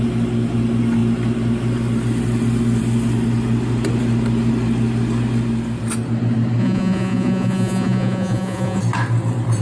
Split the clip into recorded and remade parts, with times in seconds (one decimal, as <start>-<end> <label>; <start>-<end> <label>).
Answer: 0.0-6.6 recorded; 6.6-8.8 remade; 8.8-9.6 recorded